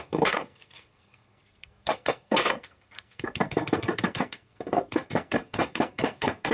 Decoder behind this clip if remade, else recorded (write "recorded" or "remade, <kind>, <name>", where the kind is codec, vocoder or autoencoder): remade, codec, SNAC